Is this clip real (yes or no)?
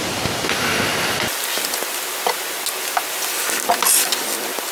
yes